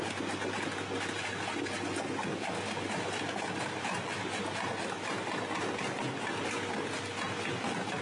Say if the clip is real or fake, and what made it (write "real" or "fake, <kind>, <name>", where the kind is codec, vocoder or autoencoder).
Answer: real